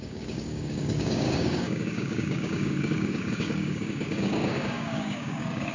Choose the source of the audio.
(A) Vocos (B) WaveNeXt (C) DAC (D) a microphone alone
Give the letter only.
C